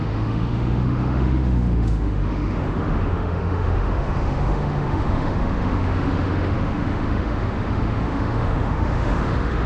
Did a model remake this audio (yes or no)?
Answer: yes